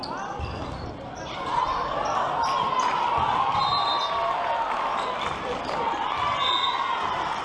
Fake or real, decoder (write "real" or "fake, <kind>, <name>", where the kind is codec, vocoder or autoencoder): real